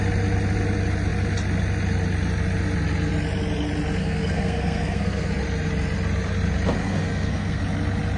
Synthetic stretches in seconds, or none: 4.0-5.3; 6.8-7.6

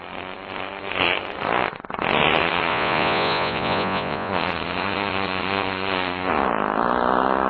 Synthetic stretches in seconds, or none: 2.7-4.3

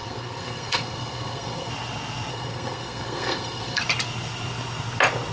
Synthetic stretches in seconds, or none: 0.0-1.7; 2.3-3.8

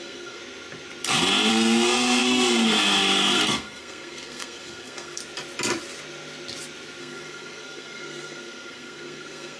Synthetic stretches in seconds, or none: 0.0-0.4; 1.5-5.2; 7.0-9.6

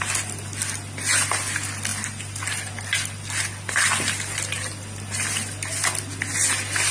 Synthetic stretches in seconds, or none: none

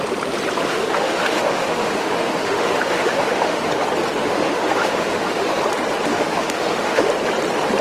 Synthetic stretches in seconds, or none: 0.7-3.7; 4.2-5.6; 6.1-7.1

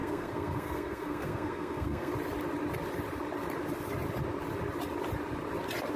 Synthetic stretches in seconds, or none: 0.0-2.1

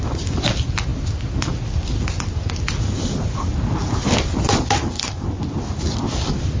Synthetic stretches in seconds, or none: none